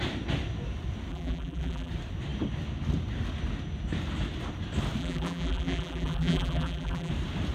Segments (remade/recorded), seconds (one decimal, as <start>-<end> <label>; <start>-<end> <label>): 0.0-1.1 recorded; 1.1-1.9 remade; 1.9-5.0 recorded; 5.0-7.1 remade; 7.1-7.5 recorded